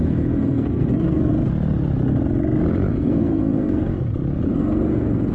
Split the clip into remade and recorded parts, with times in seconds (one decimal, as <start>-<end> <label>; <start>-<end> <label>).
0.0-1.3 remade; 1.3-2.9 recorded; 2.9-3.9 remade; 3.9-4.5 recorded; 4.5-5.3 remade